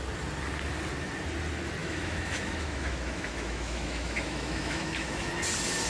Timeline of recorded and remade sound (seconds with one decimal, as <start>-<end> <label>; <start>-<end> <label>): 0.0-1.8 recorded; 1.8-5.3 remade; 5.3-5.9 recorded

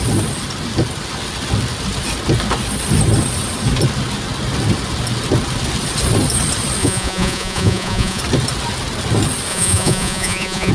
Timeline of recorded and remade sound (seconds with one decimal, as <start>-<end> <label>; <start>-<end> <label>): 0.0-6.8 recorded; 6.8-8.2 remade; 8.2-9.5 recorded; 9.5-10.7 remade

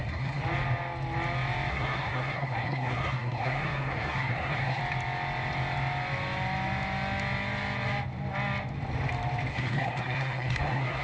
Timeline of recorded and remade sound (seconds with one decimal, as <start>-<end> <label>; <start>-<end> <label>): 0.0-0.4 remade; 0.4-1.7 recorded; 1.7-4.8 remade; 4.8-9.5 recorded; 9.5-11.0 remade